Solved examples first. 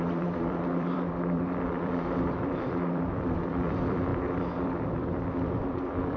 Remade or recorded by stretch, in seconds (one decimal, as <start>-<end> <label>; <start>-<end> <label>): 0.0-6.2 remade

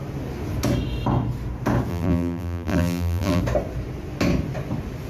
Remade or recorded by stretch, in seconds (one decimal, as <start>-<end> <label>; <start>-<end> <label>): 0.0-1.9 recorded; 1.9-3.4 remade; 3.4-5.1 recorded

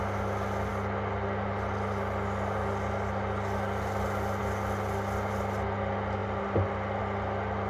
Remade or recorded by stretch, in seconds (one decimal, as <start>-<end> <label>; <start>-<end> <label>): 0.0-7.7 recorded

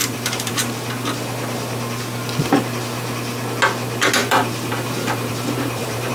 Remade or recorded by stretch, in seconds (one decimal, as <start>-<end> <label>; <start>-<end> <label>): 0.0-0.6 remade; 0.6-4.2 recorded; 4.2-6.1 remade

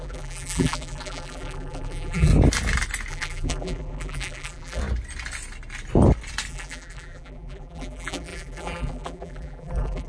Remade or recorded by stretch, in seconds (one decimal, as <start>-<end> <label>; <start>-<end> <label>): 0.0-2.3 remade; 2.3-3.1 recorded; 3.1-4.8 remade; 4.8-6.5 recorded; 6.5-10.1 remade

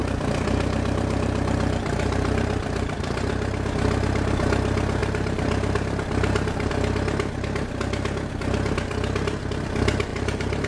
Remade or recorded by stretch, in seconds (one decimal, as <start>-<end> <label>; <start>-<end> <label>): 0.0-3.3 remade; 3.3-5.0 recorded; 5.0-6.7 remade; 6.7-10.1 recorded; 10.1-10.7 remade

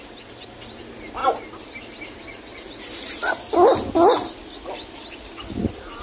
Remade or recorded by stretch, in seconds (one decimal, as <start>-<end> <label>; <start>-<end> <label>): 0.0-1.2 remade; 1.2-2.8 recorded; 2.8-3.2 remade; 3.2-5.6 recorded; 5.6-6.0 remade

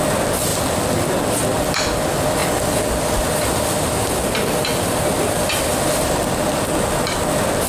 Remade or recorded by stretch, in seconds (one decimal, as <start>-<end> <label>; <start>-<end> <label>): 0.0-7.7 recorded